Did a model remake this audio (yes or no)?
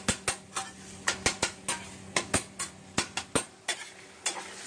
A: no